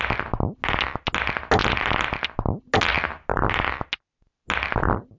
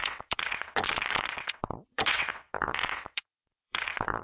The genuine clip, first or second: first